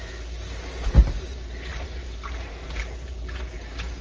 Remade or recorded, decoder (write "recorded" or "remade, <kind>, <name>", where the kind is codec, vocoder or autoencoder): remade, vocoder, BigVGAN v2